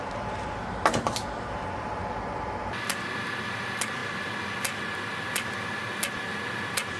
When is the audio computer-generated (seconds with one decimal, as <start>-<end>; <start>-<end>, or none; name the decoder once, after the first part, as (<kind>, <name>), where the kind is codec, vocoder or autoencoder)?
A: none